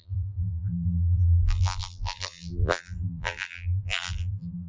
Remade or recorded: remade